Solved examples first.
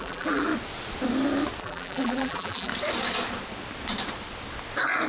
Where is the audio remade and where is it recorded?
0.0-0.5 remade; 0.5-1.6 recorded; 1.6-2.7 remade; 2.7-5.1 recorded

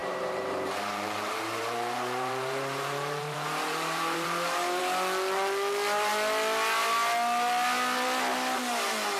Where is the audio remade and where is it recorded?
0.0-4.8 remade; 4.8-9.2 recorded

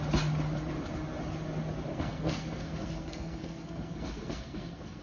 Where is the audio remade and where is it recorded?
0.0-1.9 recorded; 1.9-5.0 remade

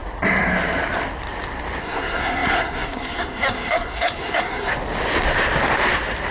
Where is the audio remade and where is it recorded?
0.0-1.8 recorded; 1.8-4.7 remade; 4.7-6.3 recorded